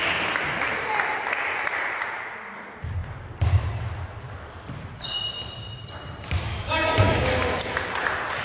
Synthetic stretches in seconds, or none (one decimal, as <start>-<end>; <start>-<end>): 6.5-7.2